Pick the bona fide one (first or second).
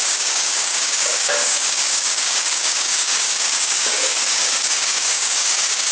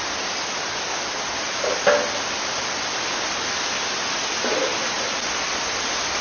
second